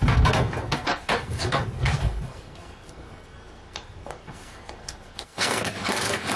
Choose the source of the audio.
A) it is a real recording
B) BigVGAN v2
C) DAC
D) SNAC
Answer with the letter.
D